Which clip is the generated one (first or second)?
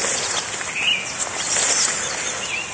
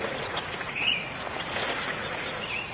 second